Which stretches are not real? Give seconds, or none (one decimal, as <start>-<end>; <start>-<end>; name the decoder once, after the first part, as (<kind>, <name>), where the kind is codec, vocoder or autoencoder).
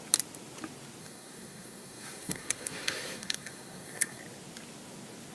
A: 1.0-4.2 (codec, SNAC)